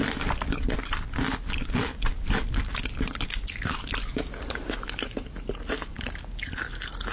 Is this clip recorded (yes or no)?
yes